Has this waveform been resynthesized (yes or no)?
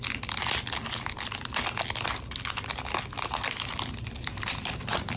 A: no